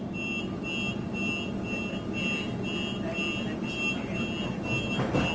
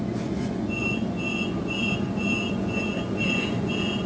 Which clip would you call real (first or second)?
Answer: first